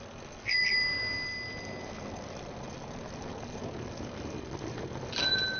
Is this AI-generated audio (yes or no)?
no